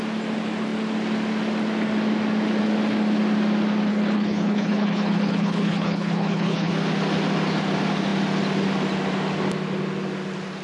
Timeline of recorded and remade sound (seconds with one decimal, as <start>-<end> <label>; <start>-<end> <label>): 0.0-3.9 recorded; 3.9-6.7 remade; 6.7-10.6 recorded